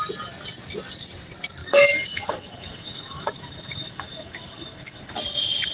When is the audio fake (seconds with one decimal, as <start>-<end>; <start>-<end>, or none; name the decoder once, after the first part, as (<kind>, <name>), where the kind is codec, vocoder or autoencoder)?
1.6-5.0 (autoencoder, DAC-VAE)